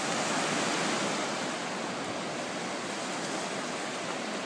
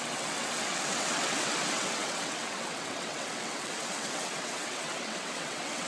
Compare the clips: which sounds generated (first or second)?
second